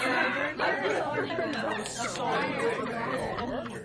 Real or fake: fake